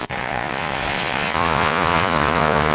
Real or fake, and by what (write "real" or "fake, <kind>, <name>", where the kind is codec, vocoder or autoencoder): fake, vocoder, Vocos